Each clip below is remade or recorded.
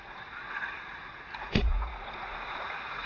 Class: remade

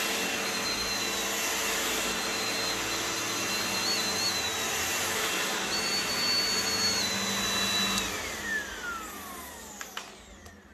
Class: recorded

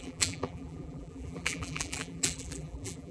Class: remade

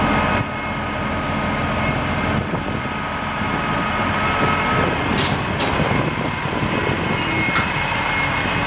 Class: recorded